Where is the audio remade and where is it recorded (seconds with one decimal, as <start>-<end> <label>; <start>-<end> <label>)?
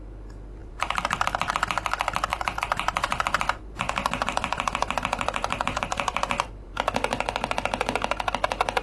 0.0-0.6 recorded; 0.6-1.5 remade; 1.5-2.3 recorded; 2.3-6.7 remade; 6.7-8.8 recorded